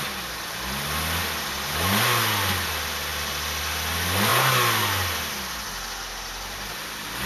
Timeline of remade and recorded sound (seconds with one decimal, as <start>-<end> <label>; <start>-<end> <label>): 0.0-7.3 recorded